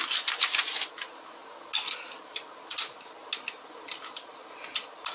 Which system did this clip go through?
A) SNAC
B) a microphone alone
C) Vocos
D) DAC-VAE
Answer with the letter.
B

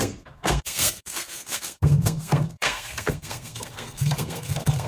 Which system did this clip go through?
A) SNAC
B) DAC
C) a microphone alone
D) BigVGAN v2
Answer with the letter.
A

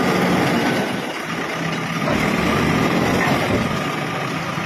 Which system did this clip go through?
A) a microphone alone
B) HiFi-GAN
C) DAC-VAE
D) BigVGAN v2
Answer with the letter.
A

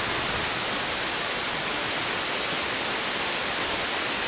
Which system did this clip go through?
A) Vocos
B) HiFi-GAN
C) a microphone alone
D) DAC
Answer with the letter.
C